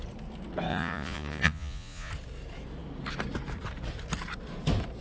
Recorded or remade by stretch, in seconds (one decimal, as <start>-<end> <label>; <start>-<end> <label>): 0.0-0.7 recorded; 0.7-2.1 remade; 2.1-5.0 recorded